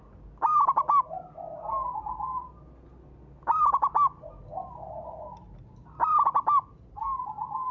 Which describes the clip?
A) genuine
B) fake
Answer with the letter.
A